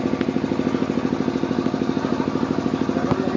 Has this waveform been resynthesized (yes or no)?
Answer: no